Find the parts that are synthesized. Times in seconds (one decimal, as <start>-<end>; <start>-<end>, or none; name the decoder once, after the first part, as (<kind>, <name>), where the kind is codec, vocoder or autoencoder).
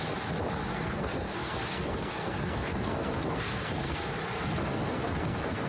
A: 0.7-4.1 (codec, SNAC); 4.7-5.7